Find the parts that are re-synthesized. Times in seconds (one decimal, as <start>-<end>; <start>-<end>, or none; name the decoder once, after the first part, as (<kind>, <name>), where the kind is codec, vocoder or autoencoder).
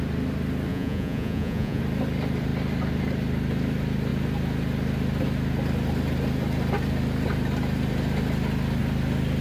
0.7-1.8 (vocoder, Vocos)